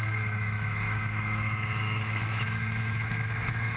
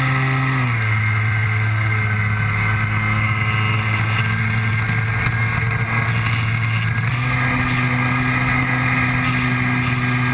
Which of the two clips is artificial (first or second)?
first